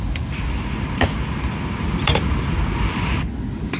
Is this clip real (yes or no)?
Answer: yes